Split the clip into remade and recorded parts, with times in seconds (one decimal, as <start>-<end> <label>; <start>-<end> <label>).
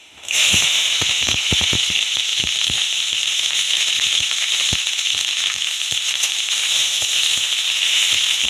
0.0-8.5 remade